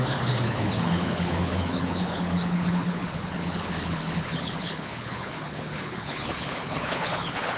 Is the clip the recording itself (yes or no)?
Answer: no